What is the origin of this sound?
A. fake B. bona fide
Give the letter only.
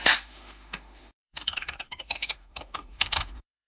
A